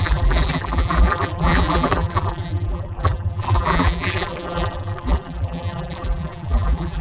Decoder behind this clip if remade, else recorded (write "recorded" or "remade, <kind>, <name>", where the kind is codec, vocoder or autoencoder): remade, vocoder, BigVGAN v2